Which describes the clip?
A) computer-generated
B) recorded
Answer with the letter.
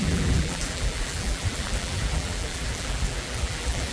A